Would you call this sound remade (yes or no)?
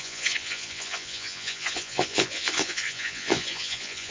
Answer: yes